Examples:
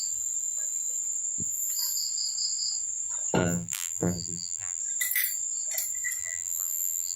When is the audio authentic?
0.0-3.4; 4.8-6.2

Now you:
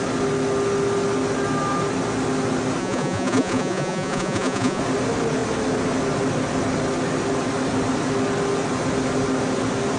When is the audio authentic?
0.0-2.8; 4.8-10.0

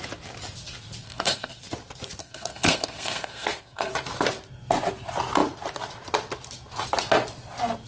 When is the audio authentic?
0.0-1.0; 1.6-2.2; 3.9-7.9

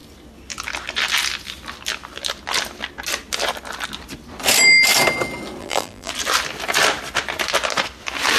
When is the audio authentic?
0.0-5.6; 6.1-8.4

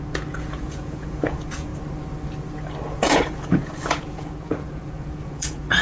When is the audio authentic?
1.7-2.9